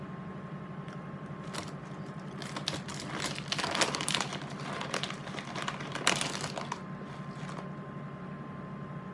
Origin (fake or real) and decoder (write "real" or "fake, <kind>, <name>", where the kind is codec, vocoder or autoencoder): real